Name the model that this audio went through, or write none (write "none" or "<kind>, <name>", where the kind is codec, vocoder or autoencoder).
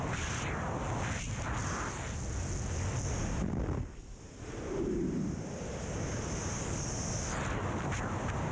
none